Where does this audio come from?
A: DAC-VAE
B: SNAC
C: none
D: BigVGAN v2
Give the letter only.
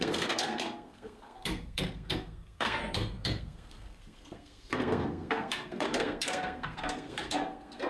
B